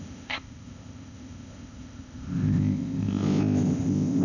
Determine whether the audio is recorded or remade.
remade